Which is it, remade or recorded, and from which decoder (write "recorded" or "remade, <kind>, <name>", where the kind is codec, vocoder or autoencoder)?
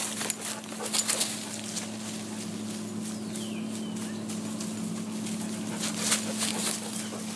recorded